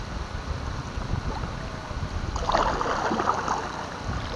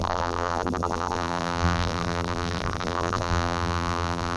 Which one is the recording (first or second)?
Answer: first